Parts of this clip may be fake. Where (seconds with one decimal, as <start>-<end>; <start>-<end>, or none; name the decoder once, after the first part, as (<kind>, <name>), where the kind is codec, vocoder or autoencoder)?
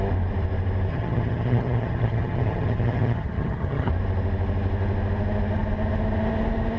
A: 0.9-3.9 (vocoder, HiFi-GAN)